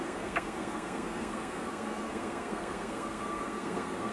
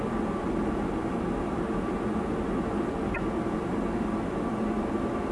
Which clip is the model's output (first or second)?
first